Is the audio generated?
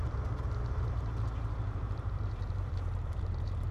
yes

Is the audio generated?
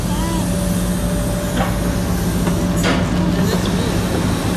no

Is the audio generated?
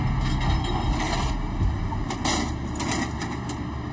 no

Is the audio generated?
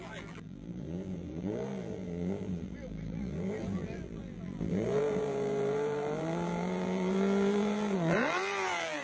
yes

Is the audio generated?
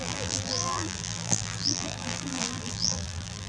yes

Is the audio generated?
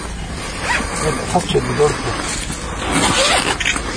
no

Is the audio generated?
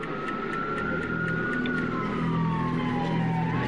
no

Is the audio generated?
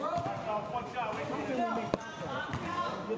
no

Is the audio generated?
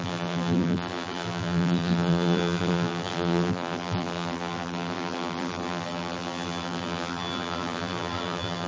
yes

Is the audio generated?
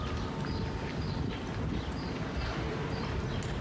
no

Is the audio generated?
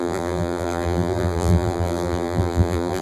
yes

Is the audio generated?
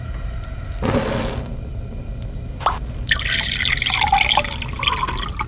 no